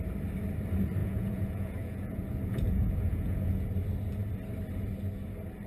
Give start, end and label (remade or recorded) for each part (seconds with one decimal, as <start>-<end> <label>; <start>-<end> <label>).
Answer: 0.0-1.0 recorded; 1.0-3.7 remade; 3.7-5.7 recorded